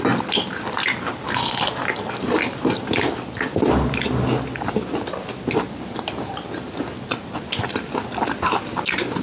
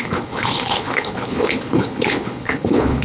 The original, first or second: first